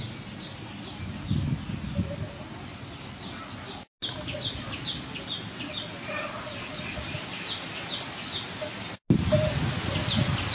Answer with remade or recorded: recorded